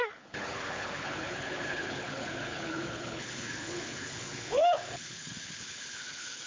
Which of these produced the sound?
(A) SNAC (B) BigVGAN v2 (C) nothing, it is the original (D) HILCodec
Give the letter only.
D